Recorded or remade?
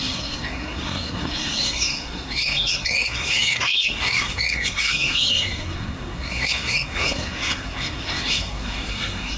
remade